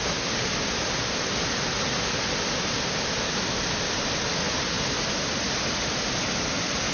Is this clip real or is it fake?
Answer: real